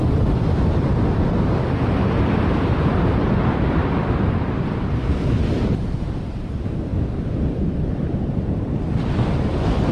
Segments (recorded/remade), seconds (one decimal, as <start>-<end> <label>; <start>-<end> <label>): 0.0-3.8 recorded; 3.8-6.5 remade; 6.5-6.9 recorded; 6.9-9.9 remade